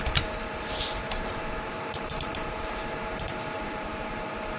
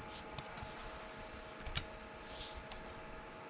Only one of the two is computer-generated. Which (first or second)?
first